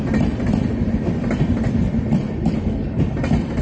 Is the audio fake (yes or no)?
no